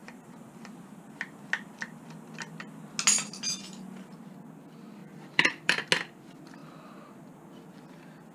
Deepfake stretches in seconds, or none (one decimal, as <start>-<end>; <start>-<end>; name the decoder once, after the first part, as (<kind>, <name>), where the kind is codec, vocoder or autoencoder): 0.0-0.8 (vocoder, BigVGAN v2); 5.0-5.9